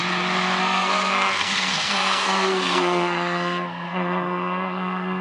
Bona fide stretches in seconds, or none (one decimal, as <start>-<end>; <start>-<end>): 0.0-0.6